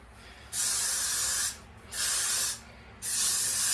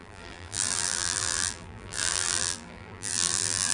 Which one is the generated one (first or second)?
second